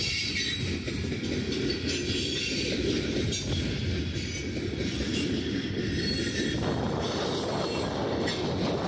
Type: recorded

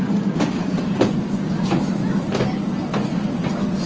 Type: recorded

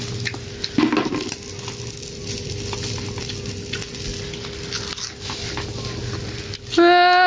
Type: recorded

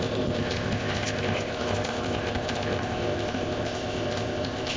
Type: remade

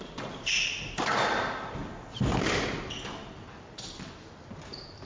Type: recorded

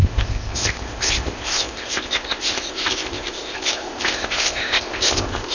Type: remade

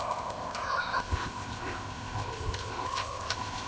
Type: remade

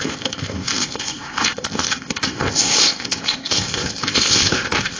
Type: remade